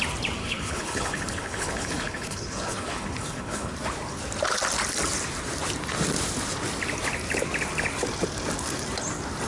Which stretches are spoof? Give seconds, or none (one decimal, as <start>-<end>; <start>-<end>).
0.4-3.7